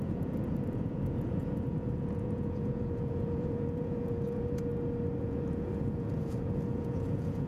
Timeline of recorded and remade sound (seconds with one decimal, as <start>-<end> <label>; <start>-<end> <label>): 0.0-4.7 remade; 4.7-5.2 recorded; 5.2-7.5 remade